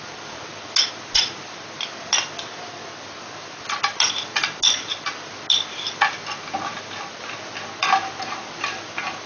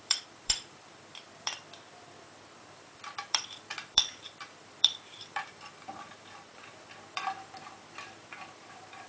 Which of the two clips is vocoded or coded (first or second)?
second